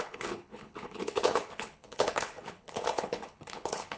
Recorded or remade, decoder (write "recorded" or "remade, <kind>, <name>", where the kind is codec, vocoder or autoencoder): remade, codec, HILCodec